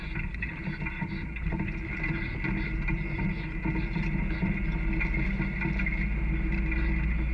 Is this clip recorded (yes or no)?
yes